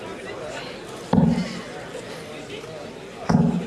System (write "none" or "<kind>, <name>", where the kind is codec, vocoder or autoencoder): vocoder, BigVGAN v2